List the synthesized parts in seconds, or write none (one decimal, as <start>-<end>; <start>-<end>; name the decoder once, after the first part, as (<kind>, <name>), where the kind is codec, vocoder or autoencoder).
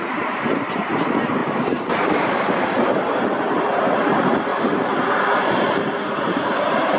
0.0-4.5 (vocoder, BigVGAN v2); 5.2-7.0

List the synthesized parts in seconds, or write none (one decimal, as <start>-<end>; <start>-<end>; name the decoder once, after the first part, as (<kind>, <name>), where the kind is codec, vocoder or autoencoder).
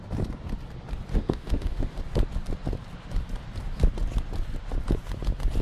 1.1-2.0 (autoencoder, DAC-VAE)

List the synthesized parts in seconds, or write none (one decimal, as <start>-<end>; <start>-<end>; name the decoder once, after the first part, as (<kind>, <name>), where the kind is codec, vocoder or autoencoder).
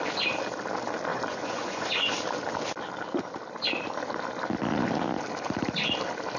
1.1-2.1 (vocoder, Vocos)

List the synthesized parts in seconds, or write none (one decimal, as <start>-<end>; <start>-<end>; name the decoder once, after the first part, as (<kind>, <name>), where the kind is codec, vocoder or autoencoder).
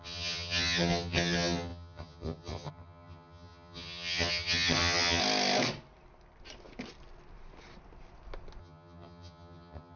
0.0-5.2 (vocoder, HiFi-GAN); 8.6-10.0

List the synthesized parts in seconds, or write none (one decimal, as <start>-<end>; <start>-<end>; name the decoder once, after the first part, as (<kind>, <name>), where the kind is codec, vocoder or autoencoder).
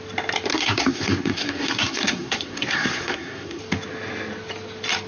0.5-3.6 (codec, SNAC)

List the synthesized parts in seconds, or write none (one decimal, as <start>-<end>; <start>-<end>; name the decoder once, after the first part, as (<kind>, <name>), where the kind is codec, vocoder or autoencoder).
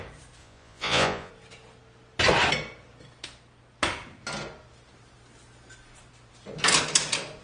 0.4-1.3 (vocoder, Vocos)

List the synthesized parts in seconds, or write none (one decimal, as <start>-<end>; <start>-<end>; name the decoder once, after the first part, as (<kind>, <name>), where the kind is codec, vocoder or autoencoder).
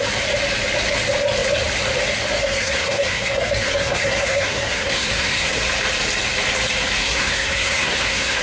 2.4-5.5 (codec, SNAC); 7.0-8.4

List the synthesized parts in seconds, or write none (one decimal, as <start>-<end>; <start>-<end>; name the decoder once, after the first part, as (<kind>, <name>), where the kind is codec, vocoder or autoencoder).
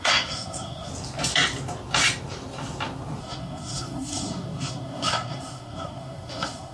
0.0-0.9 (codec, SNAC); 3.2-6.7